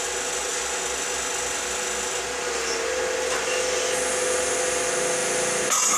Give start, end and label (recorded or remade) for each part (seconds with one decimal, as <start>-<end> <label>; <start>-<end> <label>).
0.0-6.0 recorded